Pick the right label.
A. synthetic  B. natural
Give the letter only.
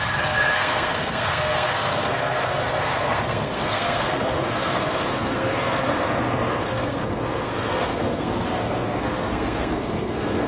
A